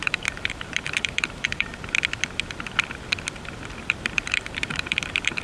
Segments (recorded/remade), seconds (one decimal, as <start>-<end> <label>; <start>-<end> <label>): 0.0-1.7 remade; 1.7-3.8 recorded; 3.8-5.4 remade